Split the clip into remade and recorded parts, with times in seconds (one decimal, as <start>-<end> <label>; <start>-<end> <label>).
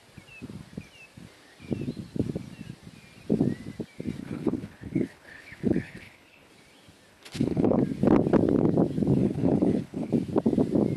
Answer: 0.0-4.2 recorded; 4.2-6.5 remade; 6.5-7.1 recorded; 7.1-7.8 remade; 7.8-9.2 recorded; 9.2-10.1 remade; 10.1-11.0 recorded